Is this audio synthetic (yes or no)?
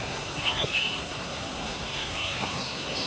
yes